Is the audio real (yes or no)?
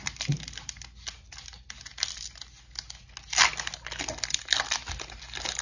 yes